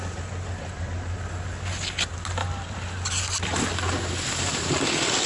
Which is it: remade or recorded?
recorded